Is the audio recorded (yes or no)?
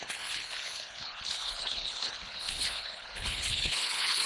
no